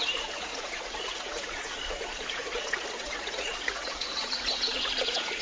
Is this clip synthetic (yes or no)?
yes